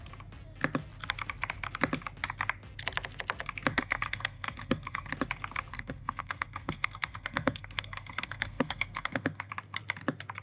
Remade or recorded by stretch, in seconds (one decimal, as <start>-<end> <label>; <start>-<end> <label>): 0.0-3.7 recorded; 3.7-5.1 remade; 5.1-5.7 recorded; 5.7-9.5 remade; 9.5-10.4 recorded